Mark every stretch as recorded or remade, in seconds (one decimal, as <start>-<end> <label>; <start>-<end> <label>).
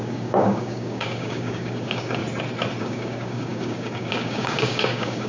0.0-2.2 remade; 2.2-2.8 recorded; 2.8-5.3 remade